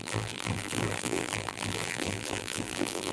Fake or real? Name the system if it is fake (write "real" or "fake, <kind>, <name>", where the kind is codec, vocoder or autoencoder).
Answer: fake, vocoder, BigVGAN v2